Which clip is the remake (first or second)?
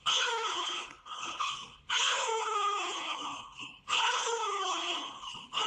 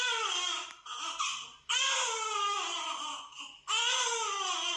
first